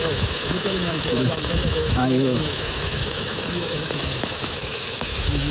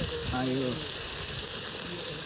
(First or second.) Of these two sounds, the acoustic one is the second